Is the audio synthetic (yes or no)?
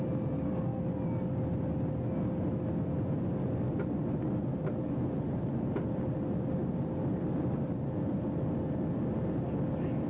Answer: no